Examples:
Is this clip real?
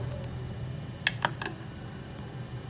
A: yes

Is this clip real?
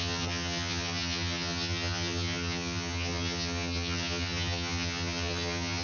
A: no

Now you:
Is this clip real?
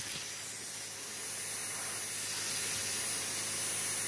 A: yes